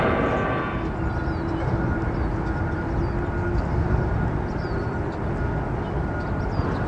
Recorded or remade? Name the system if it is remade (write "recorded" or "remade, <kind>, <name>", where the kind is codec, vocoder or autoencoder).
recorded